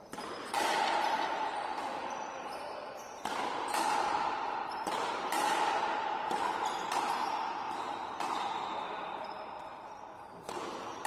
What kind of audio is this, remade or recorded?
remade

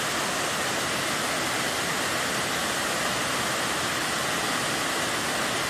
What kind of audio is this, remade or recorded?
recorded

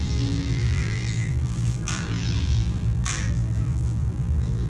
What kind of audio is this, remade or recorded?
remade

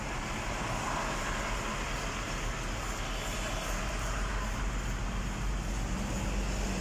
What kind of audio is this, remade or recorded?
recorded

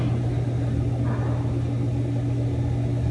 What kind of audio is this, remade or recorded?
recorded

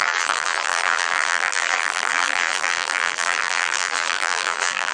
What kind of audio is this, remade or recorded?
remade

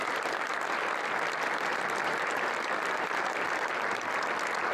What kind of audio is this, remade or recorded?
remade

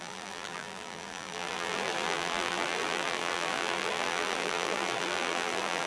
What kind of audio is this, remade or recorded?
remade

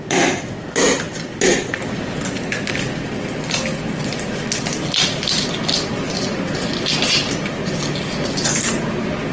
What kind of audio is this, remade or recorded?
recorded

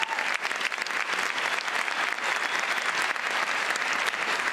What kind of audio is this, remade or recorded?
recorded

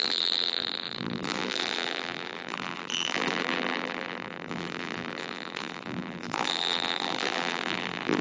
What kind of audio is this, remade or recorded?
remade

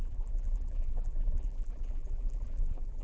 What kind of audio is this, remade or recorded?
remade